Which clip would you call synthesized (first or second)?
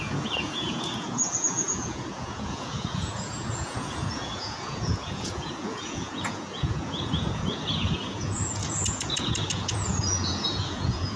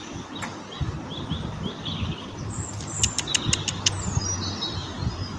first